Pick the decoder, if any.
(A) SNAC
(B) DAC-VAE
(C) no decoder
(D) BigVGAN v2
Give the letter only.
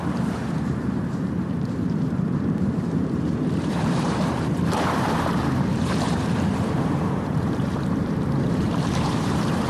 D